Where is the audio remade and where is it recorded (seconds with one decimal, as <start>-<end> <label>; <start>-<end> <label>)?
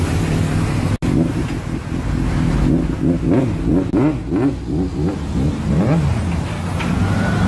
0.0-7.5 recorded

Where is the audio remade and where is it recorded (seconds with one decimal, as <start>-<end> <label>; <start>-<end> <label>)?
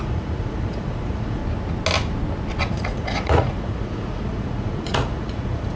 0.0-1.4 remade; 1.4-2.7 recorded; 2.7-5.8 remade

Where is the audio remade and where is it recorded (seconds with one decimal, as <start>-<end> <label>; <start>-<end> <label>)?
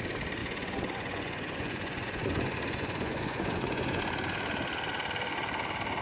0.0-0.4 recorded; 0.4-4.0 remade; 4.0-6.0 recorded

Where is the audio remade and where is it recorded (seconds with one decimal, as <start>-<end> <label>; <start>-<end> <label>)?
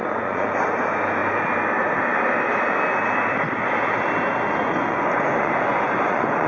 0.0-0.5 remade; 0.5-4.6 recorded; 4.6-6.5 remade